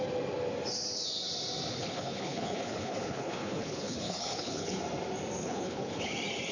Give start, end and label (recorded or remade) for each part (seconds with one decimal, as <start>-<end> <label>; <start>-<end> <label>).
0.0-1.7 recorded; 1.7-4.8 remade; 4.8-5.4 recorded; 5.4-6.1 remade; 6.1-6.5 recorded